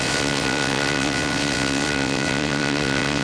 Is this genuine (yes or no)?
no